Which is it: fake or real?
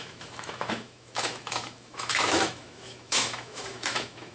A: fake